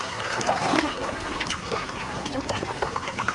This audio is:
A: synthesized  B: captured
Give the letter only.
A